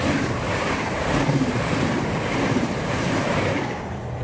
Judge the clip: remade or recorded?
remade